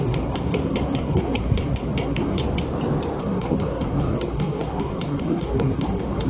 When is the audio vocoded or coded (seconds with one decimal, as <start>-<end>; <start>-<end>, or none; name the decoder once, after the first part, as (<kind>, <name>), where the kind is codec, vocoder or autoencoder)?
0.0-2.4 (codec, SNAC); 3.2-6.3